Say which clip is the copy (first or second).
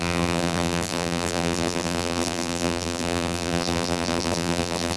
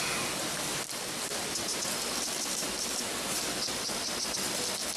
first